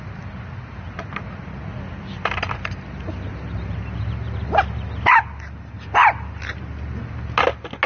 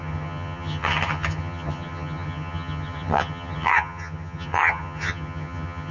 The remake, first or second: second